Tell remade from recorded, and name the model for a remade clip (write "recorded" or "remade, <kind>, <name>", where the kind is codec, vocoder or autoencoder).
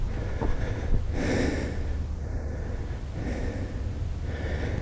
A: recorded